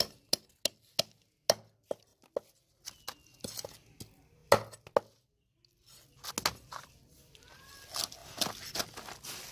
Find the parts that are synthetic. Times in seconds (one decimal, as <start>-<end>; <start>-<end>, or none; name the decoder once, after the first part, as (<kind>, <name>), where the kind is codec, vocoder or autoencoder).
none